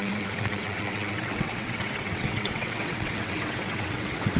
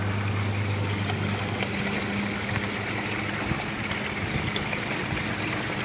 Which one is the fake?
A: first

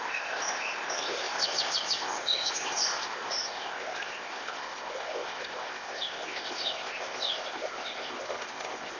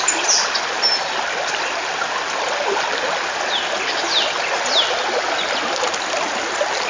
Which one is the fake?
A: first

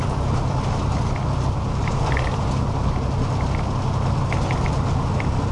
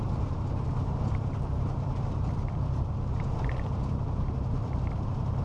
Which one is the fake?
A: second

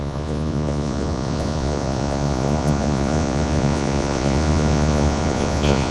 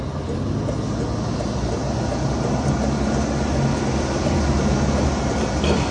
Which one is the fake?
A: first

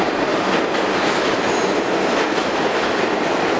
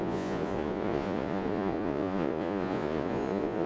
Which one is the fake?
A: second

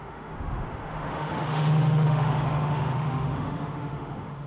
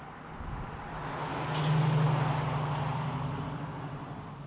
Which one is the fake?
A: first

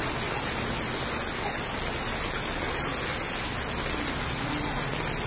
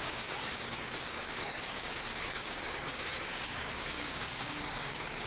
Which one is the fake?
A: second